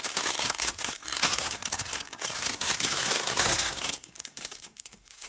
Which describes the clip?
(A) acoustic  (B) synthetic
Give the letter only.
B